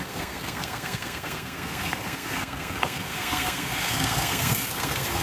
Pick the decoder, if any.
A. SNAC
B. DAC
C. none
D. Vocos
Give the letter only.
A